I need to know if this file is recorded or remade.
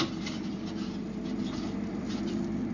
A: recorded